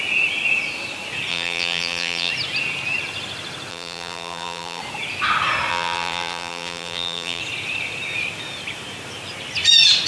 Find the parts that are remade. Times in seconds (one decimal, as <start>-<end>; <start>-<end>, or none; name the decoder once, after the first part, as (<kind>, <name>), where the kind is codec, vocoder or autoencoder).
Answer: 1.3-2.3 (vocoder, BigVGAN v2); 3.7-4.8; 5.7-7.4